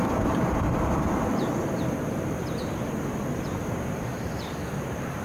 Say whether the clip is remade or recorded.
remade